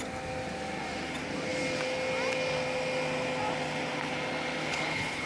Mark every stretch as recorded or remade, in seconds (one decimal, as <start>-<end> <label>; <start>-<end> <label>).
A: 0.0-4.6 recorded; 4.6-5.3 remade